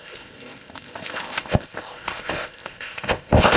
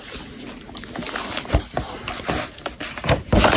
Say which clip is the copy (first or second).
first